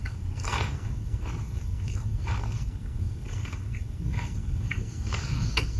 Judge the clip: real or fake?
fake